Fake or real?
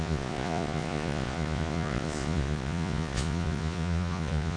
fake